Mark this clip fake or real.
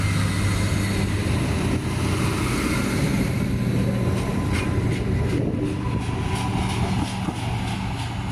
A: real